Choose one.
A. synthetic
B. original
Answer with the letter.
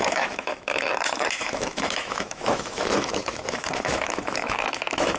A